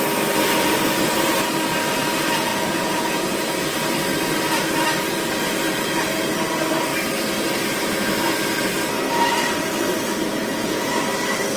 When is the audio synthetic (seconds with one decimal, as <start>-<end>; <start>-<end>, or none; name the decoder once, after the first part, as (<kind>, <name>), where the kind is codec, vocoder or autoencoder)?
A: 2.5-3.4 (vocoder, Vocos); 10.4-11.0